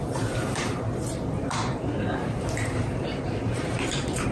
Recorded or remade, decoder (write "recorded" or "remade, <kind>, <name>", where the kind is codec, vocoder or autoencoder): remade, vocoder, BigVGAN v2